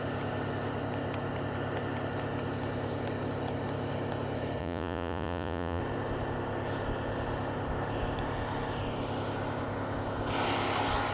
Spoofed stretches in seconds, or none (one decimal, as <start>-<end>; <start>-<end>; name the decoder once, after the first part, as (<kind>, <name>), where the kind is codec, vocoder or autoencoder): 4.6-5.8 (vocoder, Vocos)